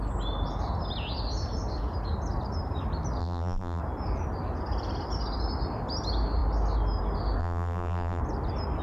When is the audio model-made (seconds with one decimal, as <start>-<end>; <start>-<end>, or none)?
3.2-3.8; 7.4-8.2